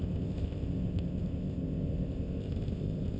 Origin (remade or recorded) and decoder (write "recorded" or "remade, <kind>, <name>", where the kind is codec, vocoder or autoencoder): remade, codec, ZipCodec